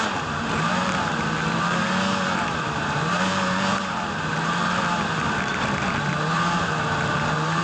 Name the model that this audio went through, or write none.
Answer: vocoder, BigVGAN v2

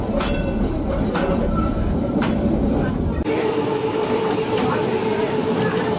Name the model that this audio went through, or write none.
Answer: none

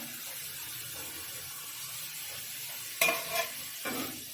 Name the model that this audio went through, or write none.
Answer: none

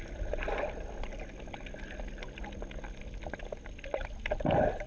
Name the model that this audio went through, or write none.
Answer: none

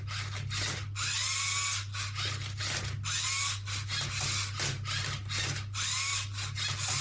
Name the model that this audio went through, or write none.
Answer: none